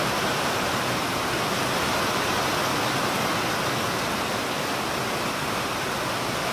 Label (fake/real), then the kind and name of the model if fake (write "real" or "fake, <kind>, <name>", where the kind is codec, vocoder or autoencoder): real